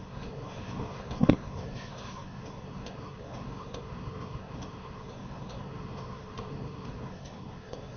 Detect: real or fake fake